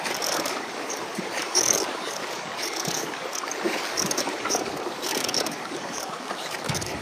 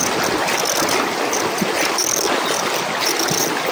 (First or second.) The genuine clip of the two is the second